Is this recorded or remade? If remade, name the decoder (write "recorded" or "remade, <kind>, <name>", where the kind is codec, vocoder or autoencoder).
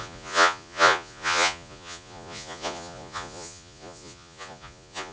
remade, vocoder, Vocos